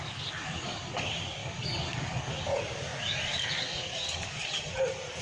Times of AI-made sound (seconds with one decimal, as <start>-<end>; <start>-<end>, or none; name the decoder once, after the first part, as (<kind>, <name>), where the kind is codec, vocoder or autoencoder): 0.0-4.4 (codec, DAC)